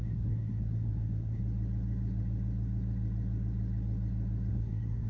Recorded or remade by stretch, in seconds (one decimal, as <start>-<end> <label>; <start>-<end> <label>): 0.0-1.4 remade; 1.4-4.5 recorded; 4.5-5.1 remade